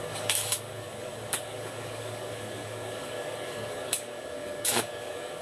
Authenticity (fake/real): fake